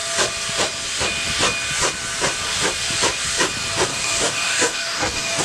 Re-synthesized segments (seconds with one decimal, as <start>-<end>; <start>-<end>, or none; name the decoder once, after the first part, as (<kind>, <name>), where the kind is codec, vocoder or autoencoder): 3.9-5.4 (codec, DAC)